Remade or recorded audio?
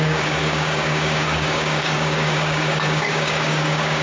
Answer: remade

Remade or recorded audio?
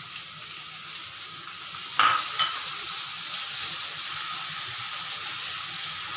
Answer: recorded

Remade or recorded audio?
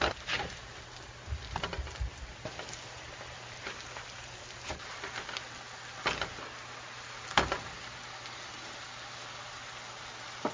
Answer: recorded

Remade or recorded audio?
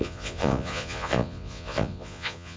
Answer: remade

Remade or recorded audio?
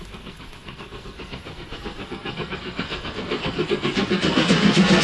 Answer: remade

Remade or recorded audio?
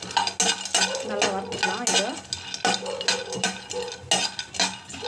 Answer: recorded